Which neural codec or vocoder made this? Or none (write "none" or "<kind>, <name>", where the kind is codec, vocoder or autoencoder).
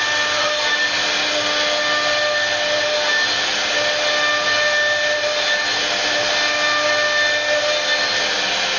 none